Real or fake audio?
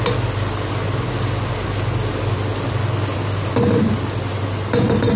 real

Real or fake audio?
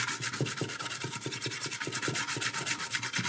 real